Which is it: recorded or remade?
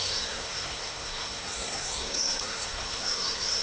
remade